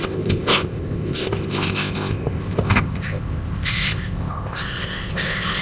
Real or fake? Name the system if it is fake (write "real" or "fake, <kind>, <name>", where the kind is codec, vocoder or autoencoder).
fake, codec, ZipCodec